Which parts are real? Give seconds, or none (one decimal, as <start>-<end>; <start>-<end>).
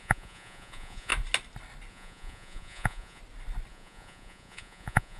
1.1-1.9; 3.2-3.7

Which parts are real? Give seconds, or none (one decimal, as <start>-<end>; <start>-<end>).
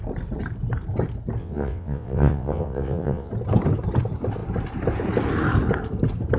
0.0-1.4; 3.3-6.4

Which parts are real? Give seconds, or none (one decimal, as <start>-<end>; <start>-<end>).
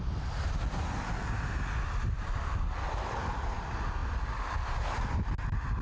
0.0-5.8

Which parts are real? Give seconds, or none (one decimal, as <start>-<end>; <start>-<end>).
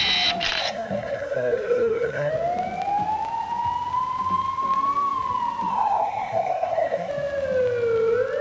0.0-0.6; 2.3-5.7; 7.1-8.4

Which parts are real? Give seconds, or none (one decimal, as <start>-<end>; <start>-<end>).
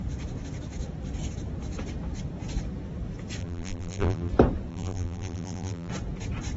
0.0-3.4; 4.3-4.7; 5.9-6.6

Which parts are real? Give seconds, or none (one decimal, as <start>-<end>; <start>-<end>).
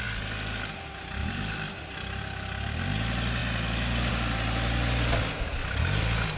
0.0-1.2; 2.2-5.6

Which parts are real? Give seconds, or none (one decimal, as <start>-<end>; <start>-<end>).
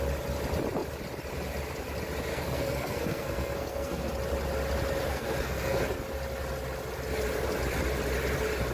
0.0-2.3; 4.1-5.1; 5.8-8.7